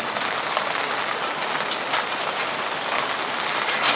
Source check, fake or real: real